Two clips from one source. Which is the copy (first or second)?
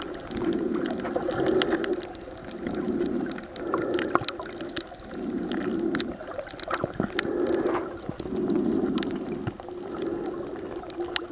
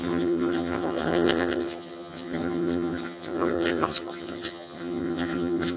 second